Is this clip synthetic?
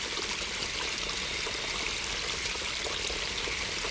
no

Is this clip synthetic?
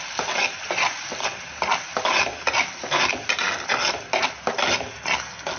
no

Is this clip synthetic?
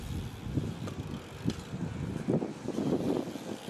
no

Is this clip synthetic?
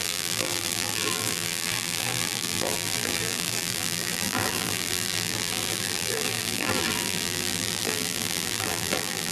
yes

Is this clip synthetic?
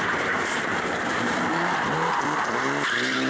yes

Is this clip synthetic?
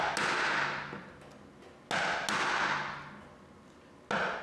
no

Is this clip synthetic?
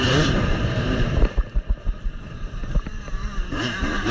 yes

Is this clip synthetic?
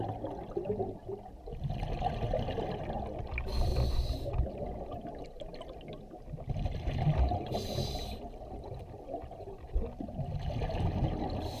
no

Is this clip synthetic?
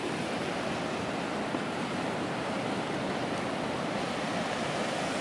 yes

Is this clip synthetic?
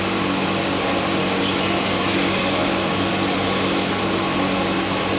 no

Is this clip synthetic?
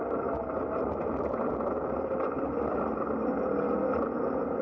no